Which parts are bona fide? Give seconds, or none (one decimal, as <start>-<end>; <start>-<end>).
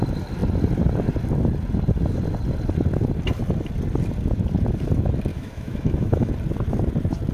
0.0-5.3; 6.3-7.3